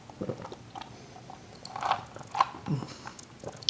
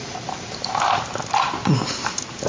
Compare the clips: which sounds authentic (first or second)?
first